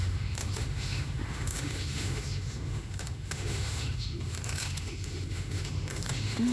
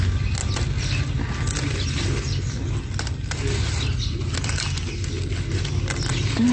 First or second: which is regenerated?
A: first